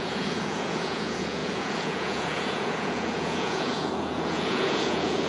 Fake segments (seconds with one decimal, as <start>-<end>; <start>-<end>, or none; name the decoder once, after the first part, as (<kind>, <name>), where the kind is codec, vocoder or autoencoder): 0.0-5.3 (vocoder, Vocos)